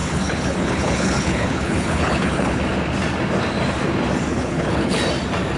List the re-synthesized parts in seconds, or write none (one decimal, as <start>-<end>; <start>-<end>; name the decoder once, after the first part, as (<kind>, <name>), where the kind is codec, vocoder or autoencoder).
0.0-2.6 (codec, HILCodec); 4.3-5.0